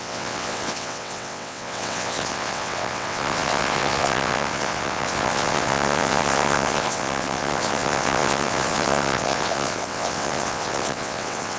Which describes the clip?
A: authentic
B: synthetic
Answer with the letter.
B